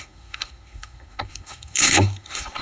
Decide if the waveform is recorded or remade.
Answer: remade